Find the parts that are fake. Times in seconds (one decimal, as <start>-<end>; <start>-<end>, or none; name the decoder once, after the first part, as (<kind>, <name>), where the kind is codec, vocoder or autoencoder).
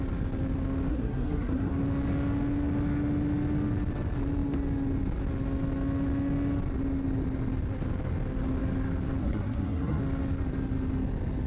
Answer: 0.9-1.7 (codec, SNAC); 9.2-10.0